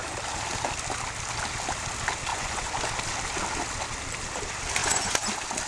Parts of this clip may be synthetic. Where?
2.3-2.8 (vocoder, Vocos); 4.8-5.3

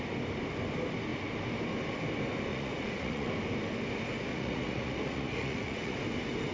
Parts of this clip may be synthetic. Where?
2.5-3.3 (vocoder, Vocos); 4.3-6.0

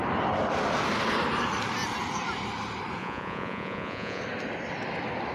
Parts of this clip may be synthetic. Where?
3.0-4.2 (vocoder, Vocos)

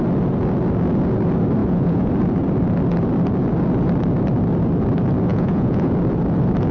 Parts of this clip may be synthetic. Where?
1.6-2.1 (vocoder, Vocos); 5.3-5.9